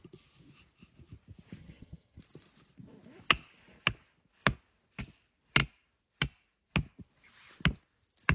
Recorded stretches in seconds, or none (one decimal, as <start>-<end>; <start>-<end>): 0.0-1.6; 2.2-8.3

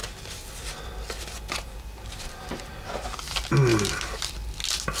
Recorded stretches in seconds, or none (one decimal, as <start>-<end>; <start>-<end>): 0.0-3.7; 4.3-5.0

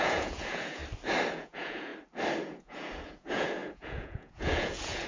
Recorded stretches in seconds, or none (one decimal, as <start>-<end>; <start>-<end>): 0.8-1.3; 1.9-2.4

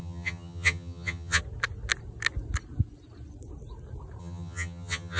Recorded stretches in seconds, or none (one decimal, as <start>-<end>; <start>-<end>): 1.4-4.2

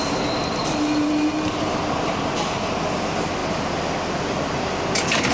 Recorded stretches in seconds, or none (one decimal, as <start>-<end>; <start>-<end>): 0.0-0.6; 1.1-5.3

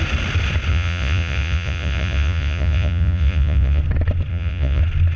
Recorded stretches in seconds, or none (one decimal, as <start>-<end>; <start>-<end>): 0.0-0.7; 3.8-4.3; 4.8-5.2

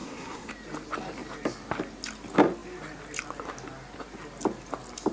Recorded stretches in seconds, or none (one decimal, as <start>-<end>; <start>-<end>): 0.5-5.1

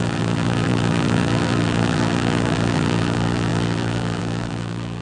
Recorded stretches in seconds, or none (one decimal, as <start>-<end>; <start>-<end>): none